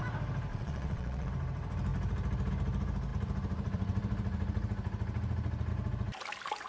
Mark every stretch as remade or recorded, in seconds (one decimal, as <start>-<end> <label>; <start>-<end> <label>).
0.0-0.5 recorded; 0.5-1.3 remade; 1.3-6.7 recorded